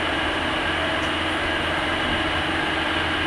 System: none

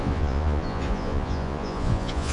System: vocoder, Vocos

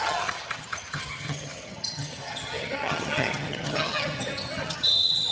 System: vocoder, HiFi-GAN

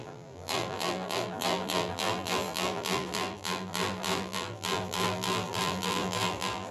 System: vocoder, BigVGAN v2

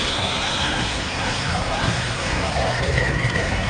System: codec, SNAC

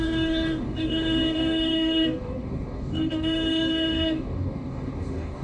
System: codec, DAC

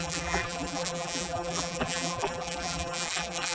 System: vocoder, BigVGAN v2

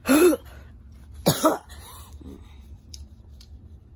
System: vocoder, BigVGAN v2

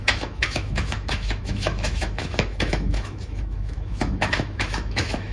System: autoencoder, DAC-VAE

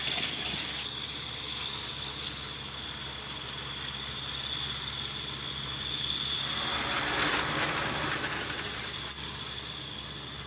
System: none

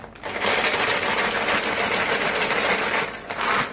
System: none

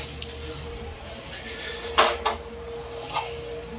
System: none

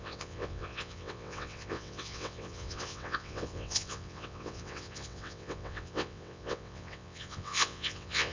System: vocoder, WaveNeXt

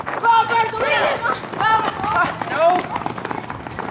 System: none